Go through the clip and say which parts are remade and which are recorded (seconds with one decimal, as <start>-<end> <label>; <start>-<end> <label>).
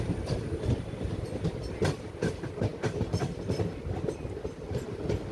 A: 0.0-5.3 recorded